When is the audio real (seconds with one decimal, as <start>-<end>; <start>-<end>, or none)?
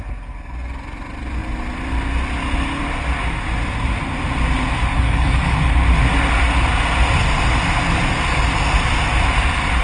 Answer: 0.0-4.9; 5.6-9.8